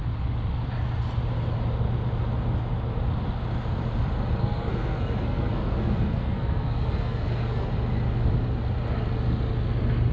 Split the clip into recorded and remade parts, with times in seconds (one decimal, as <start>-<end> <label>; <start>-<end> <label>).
0.0-4.4 recorded; 4.4-7.7 remade; 7.7-10.1 recorded